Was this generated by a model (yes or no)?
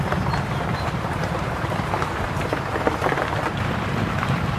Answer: yes